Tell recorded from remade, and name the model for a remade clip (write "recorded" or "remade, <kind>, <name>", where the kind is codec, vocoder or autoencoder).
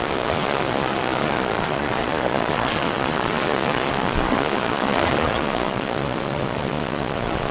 remade, vocoder, Vocos